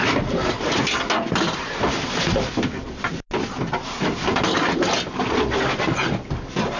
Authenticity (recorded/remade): recorded